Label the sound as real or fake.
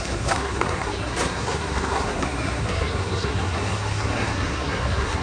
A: fake